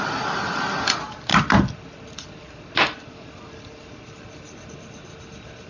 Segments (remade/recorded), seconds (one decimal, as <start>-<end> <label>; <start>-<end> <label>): 0.0-5.7 recorded